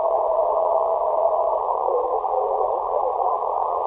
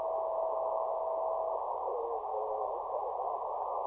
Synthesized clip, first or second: first